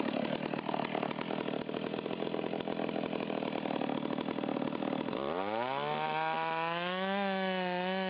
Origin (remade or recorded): recorded